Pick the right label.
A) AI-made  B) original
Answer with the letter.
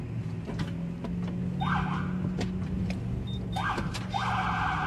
B